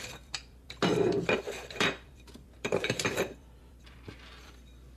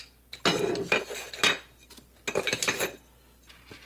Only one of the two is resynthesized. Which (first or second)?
first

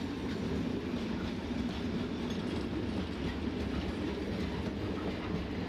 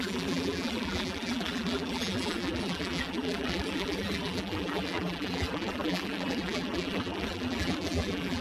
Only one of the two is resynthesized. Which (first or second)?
second